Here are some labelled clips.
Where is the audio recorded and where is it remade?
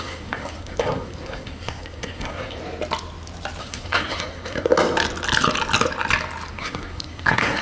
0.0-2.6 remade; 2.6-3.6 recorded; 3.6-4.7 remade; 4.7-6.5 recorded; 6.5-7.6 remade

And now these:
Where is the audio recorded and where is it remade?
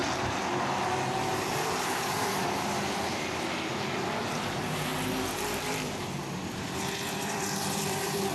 0.0-1.2 recorded; 1.2-4.9 remade; 4.9-5.6 recorded; 5.6-8.3 remade